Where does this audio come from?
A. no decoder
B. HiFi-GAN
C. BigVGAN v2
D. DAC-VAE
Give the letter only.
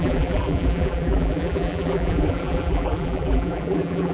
C